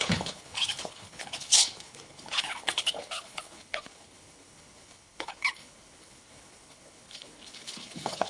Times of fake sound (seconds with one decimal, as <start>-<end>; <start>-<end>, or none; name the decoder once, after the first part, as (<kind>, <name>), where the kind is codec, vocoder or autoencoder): 0.0-8.3 (codec, HILCodec)